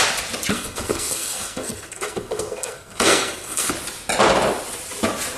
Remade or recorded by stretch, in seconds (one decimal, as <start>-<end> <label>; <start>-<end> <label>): 0.0-0.5 recorded; 0.5-3.7 remade; 3.7-5.4 recorded